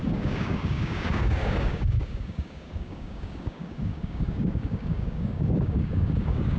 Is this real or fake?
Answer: fake